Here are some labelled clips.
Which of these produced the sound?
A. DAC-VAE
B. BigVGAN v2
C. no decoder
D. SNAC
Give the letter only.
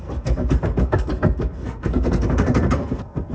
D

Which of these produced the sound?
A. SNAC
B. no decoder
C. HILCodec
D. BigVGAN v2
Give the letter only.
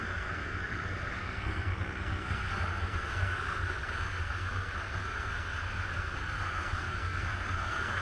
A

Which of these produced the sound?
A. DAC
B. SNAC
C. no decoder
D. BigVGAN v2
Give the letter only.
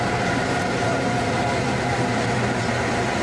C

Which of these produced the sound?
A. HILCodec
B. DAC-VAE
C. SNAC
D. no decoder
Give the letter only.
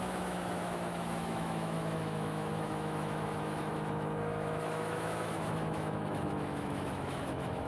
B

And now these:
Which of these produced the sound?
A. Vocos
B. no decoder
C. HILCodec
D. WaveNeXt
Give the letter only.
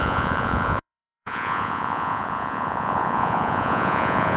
A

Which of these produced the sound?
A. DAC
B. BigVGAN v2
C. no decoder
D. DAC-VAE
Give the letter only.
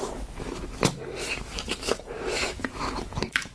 D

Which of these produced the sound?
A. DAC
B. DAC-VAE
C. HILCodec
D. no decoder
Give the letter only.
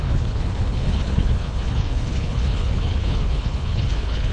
C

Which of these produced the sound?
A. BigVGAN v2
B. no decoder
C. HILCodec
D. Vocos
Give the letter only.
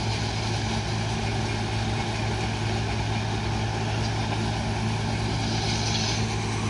B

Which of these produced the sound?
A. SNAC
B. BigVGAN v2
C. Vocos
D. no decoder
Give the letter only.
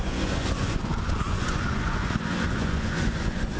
C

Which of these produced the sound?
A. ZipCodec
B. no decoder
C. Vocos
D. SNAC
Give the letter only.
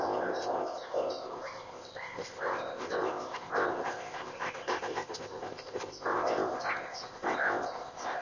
A